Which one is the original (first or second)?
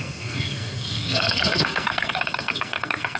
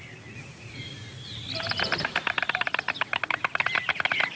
second